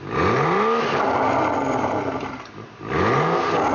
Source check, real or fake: real